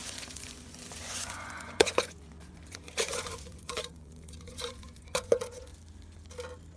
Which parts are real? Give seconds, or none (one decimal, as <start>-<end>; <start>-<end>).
5.7-6.8